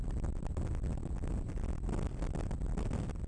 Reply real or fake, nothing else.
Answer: real